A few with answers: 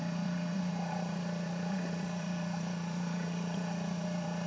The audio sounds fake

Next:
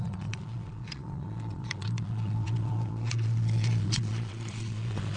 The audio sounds fake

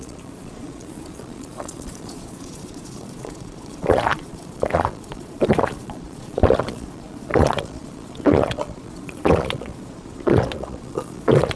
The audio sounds fake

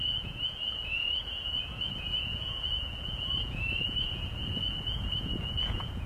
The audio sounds fake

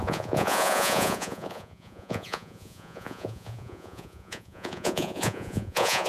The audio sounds fake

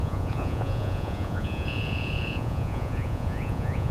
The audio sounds fake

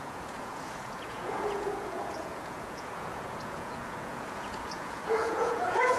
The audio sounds fake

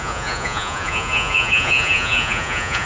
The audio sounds fake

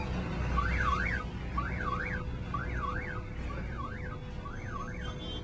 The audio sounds real